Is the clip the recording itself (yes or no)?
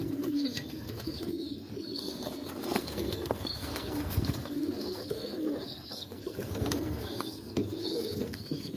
no